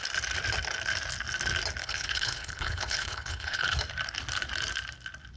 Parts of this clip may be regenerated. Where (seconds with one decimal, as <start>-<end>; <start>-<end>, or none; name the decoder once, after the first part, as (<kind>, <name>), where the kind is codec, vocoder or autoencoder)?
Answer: 1.8-3.8 (codec, HILCodec)